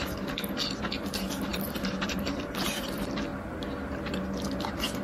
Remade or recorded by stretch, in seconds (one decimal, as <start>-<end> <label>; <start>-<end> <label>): 0.0-1.5 recorded; 1.5-2.7 remade; 2.7-5.0 recorded